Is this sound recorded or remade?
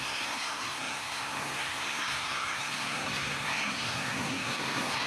remade